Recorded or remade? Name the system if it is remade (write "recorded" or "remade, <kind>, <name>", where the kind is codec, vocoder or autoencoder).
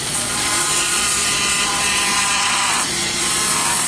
remade, vocoder, Vocos